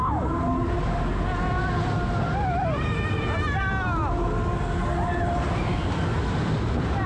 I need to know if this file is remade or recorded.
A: recorded